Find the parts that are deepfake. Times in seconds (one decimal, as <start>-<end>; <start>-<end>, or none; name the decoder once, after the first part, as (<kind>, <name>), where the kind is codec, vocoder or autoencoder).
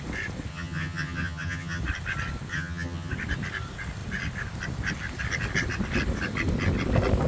0.5-1.8 (vocoder, HiFi-GAN); 2.5-3.1